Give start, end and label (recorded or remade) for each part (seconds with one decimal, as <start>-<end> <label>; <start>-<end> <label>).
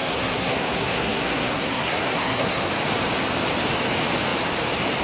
0.0-2.7 remade; 2.7-5.0 recorded